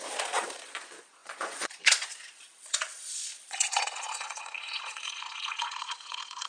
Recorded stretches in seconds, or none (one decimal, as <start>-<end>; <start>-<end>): none